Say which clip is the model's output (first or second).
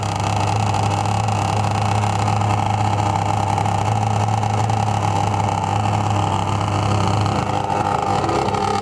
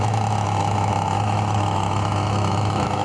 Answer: second